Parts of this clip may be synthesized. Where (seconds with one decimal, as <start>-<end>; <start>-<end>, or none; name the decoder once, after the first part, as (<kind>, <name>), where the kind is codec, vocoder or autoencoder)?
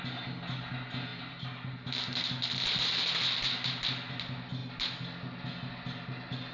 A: none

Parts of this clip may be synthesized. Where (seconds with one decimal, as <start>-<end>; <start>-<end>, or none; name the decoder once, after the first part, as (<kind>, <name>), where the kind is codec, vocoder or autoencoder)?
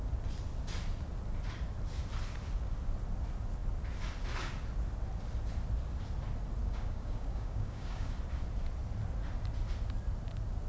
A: 6.6-8.1 (codec, DAC)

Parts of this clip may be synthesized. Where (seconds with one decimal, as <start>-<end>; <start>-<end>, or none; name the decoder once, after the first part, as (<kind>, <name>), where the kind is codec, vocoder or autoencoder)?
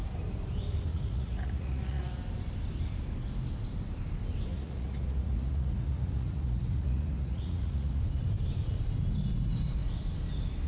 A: 0.9-2.2 (vocoder, Vocos); 4.5-8.0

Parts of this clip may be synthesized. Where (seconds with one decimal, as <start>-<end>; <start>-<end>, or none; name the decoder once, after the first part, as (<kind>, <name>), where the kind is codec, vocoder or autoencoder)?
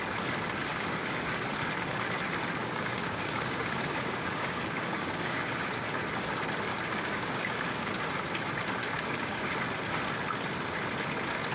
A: 0.7-1.3 (codec, DAC); 2.6-5.5; 6.7-7.9; 8.8-9.5